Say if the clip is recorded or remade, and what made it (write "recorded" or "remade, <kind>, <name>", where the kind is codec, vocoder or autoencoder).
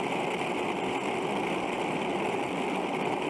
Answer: recorded